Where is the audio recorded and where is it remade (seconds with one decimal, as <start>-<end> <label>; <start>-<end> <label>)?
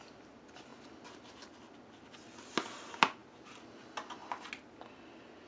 0.0-5.5 recorded